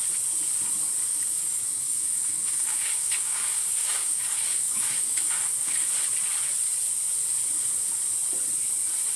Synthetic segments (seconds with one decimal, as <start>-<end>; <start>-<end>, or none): 1.1-5.9